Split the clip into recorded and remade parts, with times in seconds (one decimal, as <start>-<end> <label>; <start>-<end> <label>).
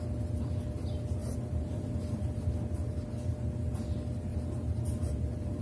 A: 0.0-1.2 recorded; 1.2-2.4 remade; 2.4-4.3 recorded; 4.3-5.6 remade